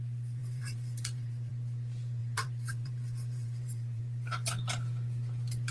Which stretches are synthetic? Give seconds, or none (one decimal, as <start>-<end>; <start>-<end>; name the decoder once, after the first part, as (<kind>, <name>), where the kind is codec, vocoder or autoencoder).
0.4-1.5 (vocoder, BigVGAN v2); 2.2-4.0

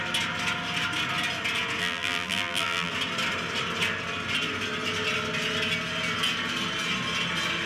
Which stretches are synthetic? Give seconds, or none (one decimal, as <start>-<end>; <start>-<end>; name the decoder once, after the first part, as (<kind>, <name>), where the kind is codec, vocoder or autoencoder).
1.8-2.9 (vocoder, BigVGAN v2)